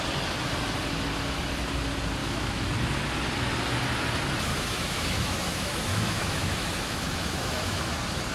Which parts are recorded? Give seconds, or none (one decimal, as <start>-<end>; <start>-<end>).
0.0-2.2; 2.7-4.5; 7.8-8.3